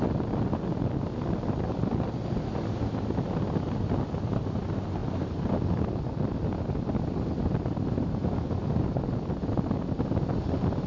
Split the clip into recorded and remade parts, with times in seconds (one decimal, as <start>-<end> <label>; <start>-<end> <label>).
0.0-5.0 recorded; 5.0-5.7 remade; 5.7-10.9 recorded

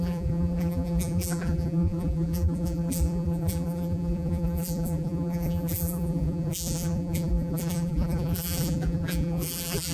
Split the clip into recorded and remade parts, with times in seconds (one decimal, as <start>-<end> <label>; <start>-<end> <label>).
0.0-9.9 remade

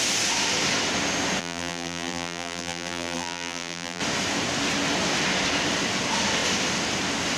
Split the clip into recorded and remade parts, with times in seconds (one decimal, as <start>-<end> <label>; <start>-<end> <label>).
0.0-1.4 recorded; 1.4-4.0 remade; 4.0-7.4 recorded

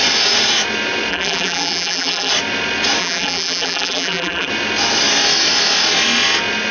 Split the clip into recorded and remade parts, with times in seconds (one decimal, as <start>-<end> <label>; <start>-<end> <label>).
0.0-1.1 recorded; 1.1-2.3 remade; 2.3-3.0 recorded; 3.0-4.5 remade; 4.5-6.7 recorded

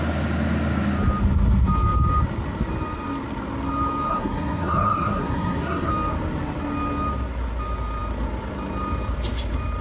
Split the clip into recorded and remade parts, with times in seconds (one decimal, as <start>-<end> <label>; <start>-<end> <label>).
0.0-4.1 recorded; 4.1-5.9 remade; 5.9-9.8 recorded

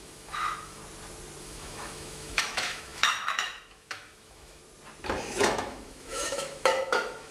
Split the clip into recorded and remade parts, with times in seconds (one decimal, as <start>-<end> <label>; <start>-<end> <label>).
0.0-0.8 remade; 0.8-1.4 recorded; 1.4-4.6 remade; 4.6-5.2 recorded; 5.2-7.3 remade

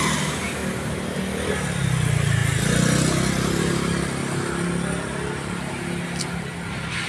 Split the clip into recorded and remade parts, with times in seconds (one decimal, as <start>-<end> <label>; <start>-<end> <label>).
0.0-7.1 recorded